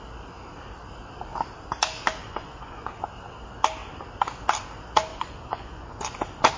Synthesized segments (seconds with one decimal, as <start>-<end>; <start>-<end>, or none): 2.2-2.9; 5.1-6.0